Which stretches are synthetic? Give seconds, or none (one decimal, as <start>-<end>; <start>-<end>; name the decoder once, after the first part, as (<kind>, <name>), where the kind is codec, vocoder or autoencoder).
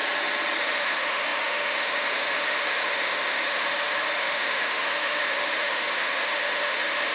0.6-7.1 (autoencoder, DAC-VAE)